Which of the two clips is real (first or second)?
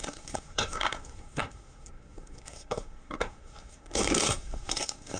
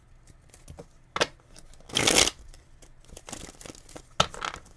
second